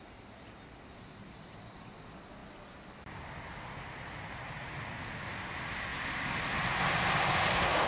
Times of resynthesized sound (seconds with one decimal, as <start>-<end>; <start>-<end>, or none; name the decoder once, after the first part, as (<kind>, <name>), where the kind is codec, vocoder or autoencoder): 2.4-3.2 (vocoder, BigVGAN v2); 5.9-6.4